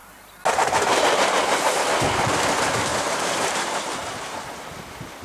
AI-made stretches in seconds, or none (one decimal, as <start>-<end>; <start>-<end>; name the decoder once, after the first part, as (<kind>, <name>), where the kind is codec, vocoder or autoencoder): 0.9-1.8 (vocoder, BigVGAN v2); 2.9-4.4